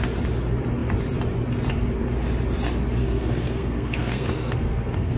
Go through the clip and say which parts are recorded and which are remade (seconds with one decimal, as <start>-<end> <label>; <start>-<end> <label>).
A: 0.0-3.0 recorded; 3.0-5.2 remade